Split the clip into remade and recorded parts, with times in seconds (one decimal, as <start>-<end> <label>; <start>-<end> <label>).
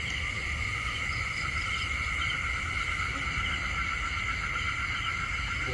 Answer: 0.0-0.4 recorded; 0.4-1.3 remade; 1.3-5.7 recorded